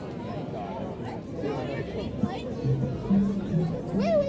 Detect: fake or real real